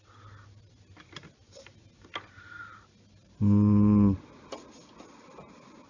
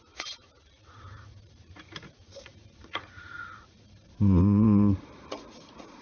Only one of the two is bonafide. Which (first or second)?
first